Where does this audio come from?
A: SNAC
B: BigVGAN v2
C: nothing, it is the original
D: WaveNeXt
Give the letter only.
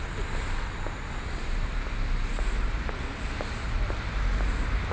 C